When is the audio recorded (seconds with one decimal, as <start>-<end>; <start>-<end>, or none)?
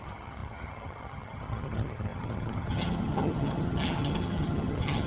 none